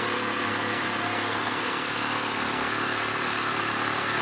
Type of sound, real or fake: fake